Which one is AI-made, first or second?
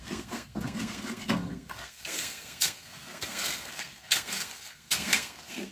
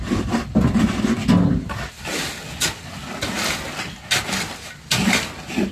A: first